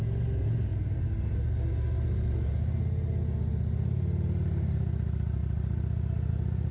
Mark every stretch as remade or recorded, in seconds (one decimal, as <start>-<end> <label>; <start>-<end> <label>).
0.0-6.7 recorded